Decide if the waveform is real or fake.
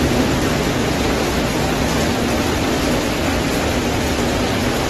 real